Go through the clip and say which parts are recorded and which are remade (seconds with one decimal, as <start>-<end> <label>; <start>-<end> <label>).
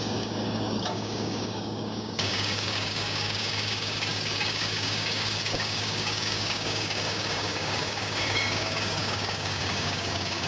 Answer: 0.0-10.5 remade